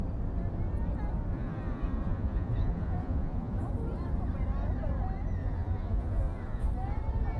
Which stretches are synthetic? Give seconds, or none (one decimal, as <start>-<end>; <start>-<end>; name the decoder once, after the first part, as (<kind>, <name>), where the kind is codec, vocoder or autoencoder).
1.3-3.7 (vocoder, Vocos); 5.4-6.7